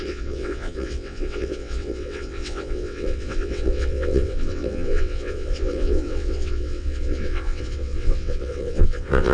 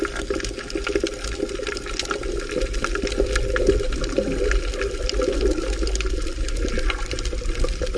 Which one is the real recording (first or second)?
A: second